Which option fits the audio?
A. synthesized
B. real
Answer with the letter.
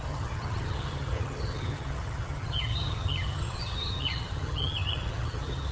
A